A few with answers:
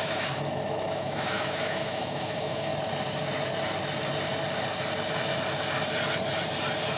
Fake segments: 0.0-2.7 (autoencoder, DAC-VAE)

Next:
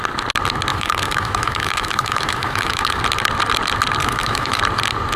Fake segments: 0.7-3.0 (autoencoder, DAC-VAE); 4.0-4.6

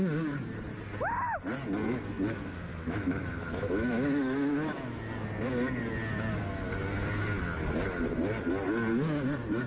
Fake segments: 2.7-5.0 (autoencoder, DAC-VAE)